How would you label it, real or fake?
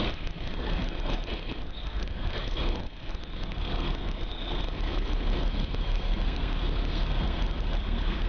fake